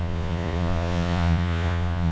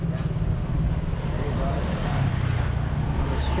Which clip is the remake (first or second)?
first